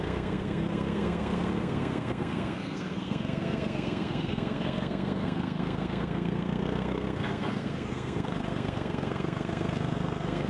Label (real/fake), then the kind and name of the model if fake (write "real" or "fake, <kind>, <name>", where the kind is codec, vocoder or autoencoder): fake, codec, SNAC